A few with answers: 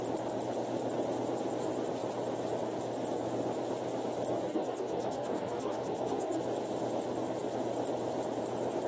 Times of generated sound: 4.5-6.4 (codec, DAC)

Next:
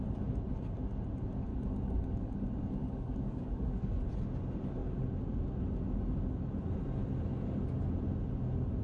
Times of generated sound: 1.5-4.0 (codec, DAC)

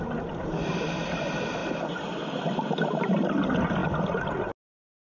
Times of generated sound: none

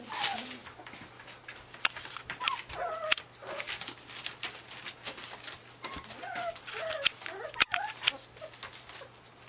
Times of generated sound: none

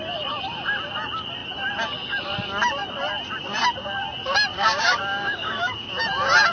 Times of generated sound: 4.5-5.9 (codec, DAC)

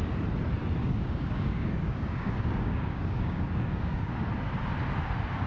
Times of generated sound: 0.8-4.1 (codec, DAC)

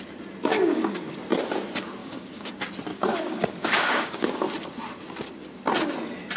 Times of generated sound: 0.5-1.2 (codec, DAC); 2.0-2.5; 2.9-4.4